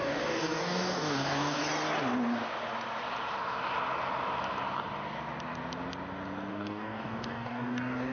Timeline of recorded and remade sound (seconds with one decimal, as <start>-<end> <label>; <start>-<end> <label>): 0.0-1.6 remade; 1.6-6.5 recorded; 6.5-8.1 remade